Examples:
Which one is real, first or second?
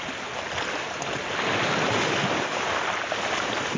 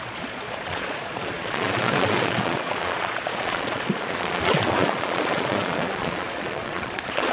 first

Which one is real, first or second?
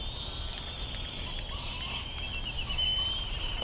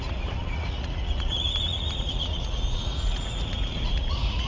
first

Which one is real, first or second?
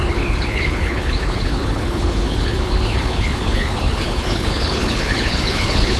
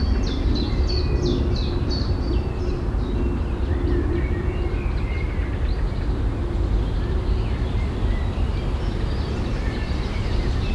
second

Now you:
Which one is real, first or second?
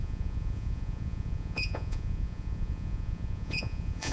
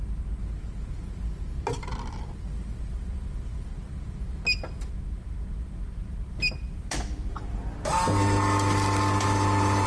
second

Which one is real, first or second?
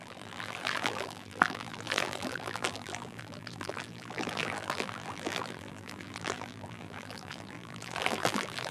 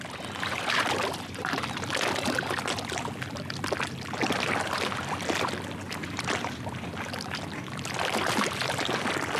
second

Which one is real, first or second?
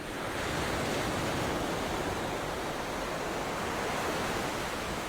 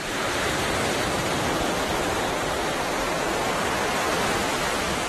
first